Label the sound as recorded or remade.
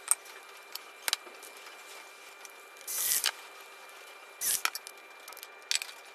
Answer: recorded